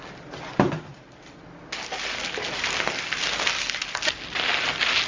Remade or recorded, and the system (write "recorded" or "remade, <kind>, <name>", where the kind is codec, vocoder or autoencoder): recorded